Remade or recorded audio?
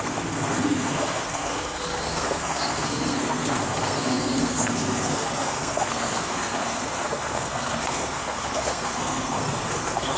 remade